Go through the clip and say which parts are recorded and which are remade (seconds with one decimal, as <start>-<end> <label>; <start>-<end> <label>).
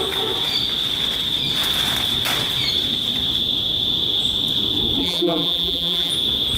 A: 0.0-5.0 recorded; 5.0-6.1 remade; 6.1-6.6 recorded